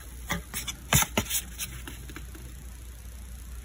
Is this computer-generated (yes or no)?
no